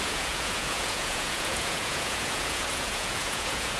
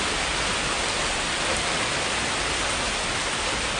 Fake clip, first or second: first